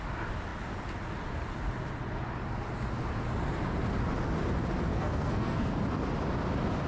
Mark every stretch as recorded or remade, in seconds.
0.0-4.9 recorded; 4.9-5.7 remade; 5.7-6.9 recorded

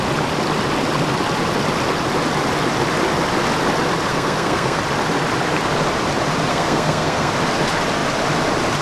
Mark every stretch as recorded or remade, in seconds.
0.0-4.1 recorded; 4.1-4.8 remade; 4.8-6.5 recorded; 6.5-7.3 remade; 7.3-8.8 recorded

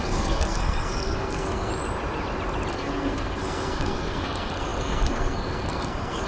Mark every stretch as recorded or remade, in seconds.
0.0-1.7 remade; 1.7-2.7 recorded; 2.7-6.3 remade